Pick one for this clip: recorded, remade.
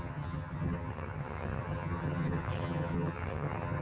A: remade